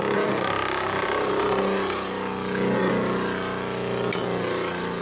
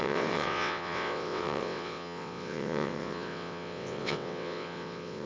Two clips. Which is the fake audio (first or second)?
second